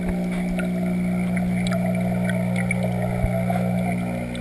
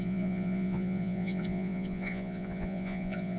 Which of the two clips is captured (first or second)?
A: first